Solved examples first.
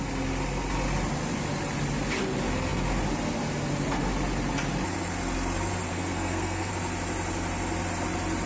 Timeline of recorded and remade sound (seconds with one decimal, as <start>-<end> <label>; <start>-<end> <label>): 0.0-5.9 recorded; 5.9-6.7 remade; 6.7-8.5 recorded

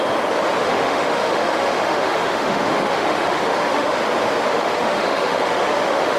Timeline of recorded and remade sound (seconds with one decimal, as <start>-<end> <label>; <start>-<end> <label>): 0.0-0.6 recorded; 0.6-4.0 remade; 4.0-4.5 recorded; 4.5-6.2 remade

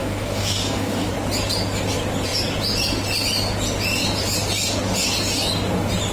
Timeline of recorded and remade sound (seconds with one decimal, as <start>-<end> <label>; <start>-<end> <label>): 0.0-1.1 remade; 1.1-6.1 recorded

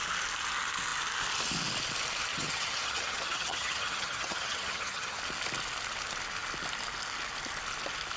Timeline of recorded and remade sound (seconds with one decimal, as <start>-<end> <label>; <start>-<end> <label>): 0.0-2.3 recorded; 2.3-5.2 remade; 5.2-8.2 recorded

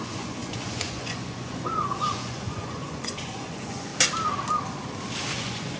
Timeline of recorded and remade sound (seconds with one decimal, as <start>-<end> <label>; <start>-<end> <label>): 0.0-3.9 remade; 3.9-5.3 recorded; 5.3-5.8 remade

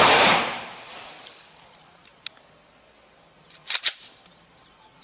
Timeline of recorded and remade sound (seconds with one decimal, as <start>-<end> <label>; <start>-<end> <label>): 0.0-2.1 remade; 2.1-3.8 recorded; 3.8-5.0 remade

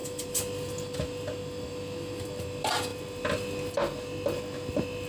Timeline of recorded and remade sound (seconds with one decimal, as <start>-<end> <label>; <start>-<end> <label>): 0.0-5.1 recorded

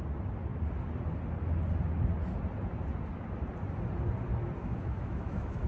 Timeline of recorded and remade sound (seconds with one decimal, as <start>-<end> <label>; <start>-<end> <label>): 0.0-4.6 recorded; 4.6-5.7 remade